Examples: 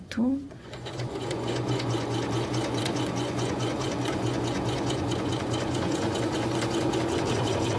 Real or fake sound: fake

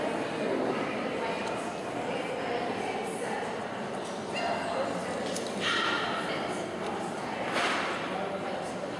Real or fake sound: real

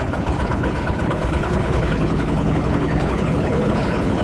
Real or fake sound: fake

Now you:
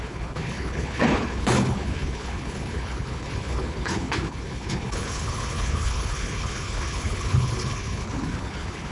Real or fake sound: fake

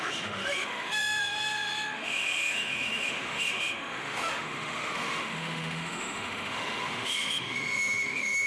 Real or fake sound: fake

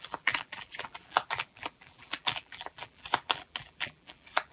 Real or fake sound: fake